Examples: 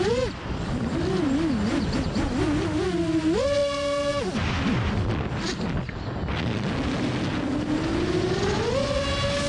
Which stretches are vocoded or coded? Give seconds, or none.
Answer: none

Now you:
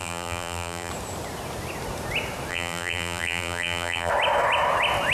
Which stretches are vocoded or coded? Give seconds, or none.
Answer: 0.0-0.9 (vocoder, BigVGAN v2); 2.5-4.1

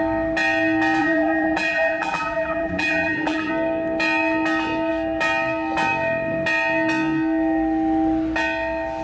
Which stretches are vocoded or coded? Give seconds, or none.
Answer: 1.0-3.5 (vocoder, BigVGAN v2)